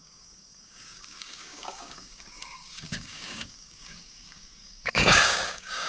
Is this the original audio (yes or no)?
no